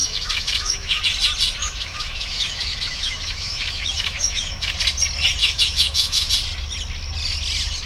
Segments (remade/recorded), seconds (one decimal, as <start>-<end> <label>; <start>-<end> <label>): 0.0-1.0 remade; 1.0-1.6 recorded; 1.6-4.7 remade; 4.7-5.4 recorded; 5.4-6.3 remade; 6.3-7.9 recorded